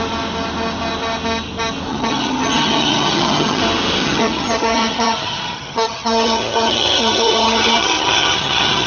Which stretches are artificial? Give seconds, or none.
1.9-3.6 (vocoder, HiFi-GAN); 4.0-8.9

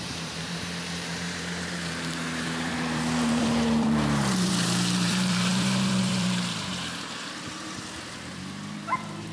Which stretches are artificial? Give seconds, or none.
0.0-9.3 (vocoder, BigVGAN v2)

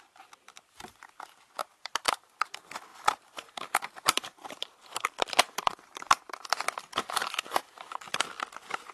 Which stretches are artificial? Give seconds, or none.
1.6-2.4 (vocoder, BigVGAN v2); 2.9-6.5; 7.2-8.2

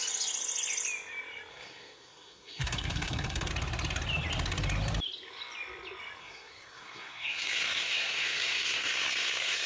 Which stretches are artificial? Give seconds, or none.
1.5-3.5 (codec, SNAC); 6.2-9.7

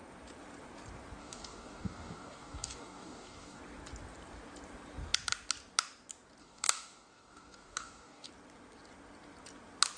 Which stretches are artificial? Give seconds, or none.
1.2-3.6 (codec, DAC); 6.4-8.3

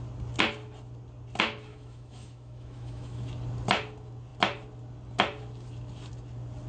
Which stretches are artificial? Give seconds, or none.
1.7-3.3 (autoencoder, DAC-VAE)

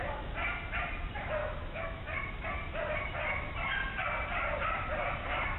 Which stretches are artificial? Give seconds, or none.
1.4-2.3 (autoencoder, DAC-VAE)